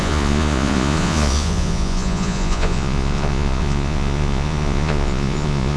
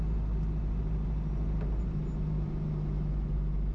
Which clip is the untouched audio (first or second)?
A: second